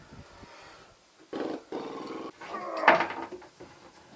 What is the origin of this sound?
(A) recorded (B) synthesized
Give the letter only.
A